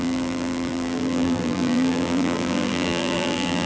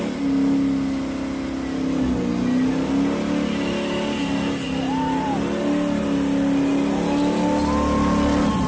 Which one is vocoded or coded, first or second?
first